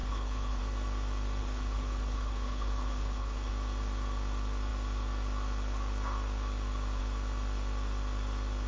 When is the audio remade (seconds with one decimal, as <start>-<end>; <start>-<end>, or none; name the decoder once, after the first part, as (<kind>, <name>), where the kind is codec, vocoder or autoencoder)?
0.0-0.6 (codec, HILCodec); 1.4-3.5

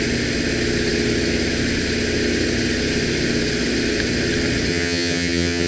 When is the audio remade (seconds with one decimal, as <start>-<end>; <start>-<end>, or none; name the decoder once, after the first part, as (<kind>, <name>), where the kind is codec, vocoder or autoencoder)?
4.7-5.7 (vocoder, HiFi-GAN)

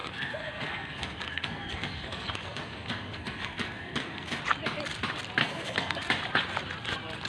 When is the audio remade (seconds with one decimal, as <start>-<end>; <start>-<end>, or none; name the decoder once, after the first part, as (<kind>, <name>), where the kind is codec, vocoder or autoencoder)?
0.0-4.4 (codec, SNAC); 5.4-6.0

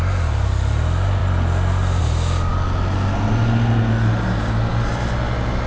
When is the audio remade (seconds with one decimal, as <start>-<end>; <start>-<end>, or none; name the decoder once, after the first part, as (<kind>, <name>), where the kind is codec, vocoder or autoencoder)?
none

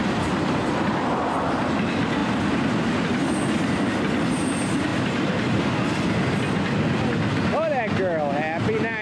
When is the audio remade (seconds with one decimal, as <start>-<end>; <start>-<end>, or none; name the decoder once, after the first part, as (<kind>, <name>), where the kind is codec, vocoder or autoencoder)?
none